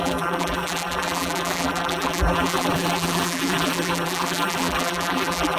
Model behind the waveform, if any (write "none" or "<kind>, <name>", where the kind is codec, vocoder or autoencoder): vocoder, BigVGAN v2